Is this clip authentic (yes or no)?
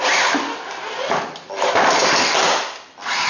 yes